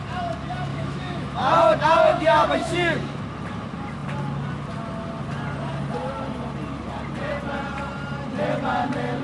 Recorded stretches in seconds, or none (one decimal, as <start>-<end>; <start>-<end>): 0.0-0.7; 1.5-2.1; 3.2-9.2